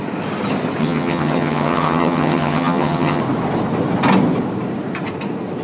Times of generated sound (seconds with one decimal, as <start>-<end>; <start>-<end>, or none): 0.8-3.2